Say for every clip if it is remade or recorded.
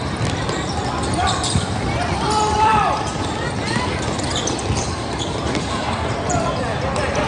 remade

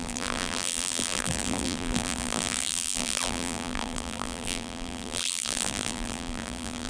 remade